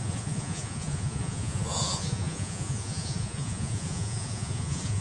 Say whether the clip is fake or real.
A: fake